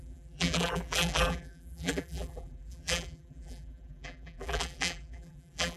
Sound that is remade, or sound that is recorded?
remade